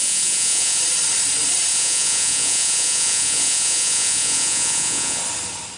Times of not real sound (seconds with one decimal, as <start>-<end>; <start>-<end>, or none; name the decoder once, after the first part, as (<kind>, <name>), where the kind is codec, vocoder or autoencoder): 0.0-0.8 (vocoder, Vocos); 1.7-5.2